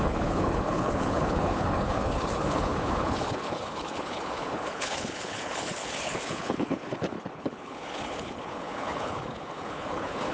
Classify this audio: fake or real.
fake